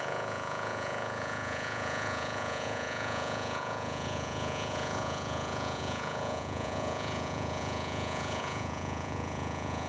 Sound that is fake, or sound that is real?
fake